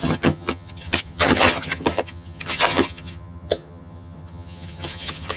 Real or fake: fake